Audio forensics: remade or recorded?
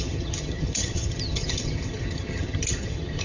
remade